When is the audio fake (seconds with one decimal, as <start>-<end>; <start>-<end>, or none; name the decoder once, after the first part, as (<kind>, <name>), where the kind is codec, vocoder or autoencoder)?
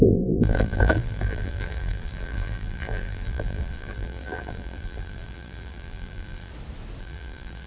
0.0-6.5 (vocoder, BigVGAN v2); 7.0-7.7